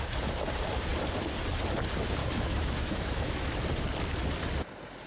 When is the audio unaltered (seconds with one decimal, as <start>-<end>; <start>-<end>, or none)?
0.0-2.2; 3.5-5.1